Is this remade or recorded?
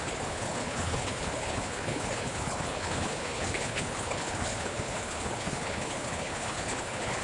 remade